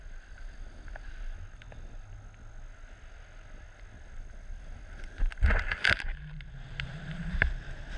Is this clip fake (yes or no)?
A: no